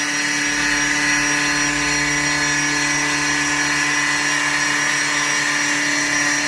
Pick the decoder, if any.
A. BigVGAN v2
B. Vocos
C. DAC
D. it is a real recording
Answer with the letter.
D